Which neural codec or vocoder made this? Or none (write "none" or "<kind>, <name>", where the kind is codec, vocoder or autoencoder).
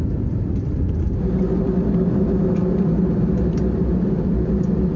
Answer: none